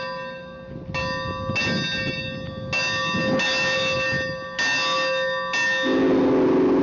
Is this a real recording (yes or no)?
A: yes